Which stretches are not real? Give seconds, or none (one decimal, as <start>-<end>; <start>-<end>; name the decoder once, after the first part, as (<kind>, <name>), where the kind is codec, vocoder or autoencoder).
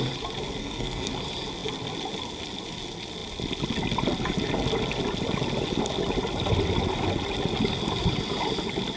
0.6-1.1 (codec, SNAC)